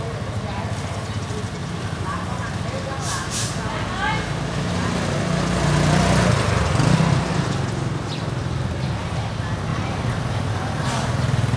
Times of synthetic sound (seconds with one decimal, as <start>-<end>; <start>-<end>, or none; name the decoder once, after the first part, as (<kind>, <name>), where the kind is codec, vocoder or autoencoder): 1.6-2.6 (vocoder, BigVGAN v2); 9.7-11.6